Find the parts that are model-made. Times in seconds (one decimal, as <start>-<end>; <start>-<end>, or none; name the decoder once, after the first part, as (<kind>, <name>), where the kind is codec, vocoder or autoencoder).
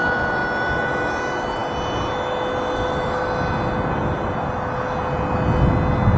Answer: none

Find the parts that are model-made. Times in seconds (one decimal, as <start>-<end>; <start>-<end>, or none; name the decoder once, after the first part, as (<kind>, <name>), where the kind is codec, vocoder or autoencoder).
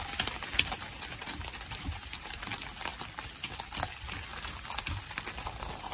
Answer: none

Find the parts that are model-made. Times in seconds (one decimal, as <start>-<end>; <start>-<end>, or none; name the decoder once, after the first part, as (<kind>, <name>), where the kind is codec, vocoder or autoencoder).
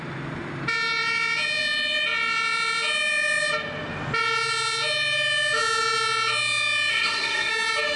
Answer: 6.9-7.5 (codec, SNAC)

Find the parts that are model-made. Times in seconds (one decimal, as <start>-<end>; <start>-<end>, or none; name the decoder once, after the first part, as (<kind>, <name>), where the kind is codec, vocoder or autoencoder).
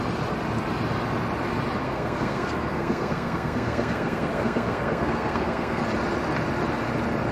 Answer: 1.8-5.8 (codec, SNAC)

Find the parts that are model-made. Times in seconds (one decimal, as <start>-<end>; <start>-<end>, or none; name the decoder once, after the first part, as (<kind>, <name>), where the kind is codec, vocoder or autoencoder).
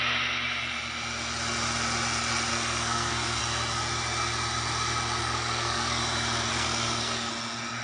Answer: 2.5-3.4 (codec, SNAC); 5.2-6.0; 6.5-7.3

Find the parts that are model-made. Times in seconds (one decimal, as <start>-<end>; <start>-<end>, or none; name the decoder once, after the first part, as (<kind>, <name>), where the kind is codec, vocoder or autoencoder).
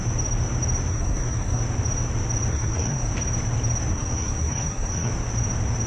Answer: 0.9-1.6 (codec, SNAC); 2.5-3.1; 3.9-5.1